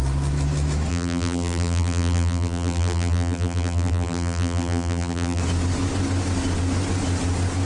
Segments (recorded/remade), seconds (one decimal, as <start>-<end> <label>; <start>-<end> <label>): 0.0-0.9 recorded; 0.9-5.4 remade; 5.4-7.7 recorded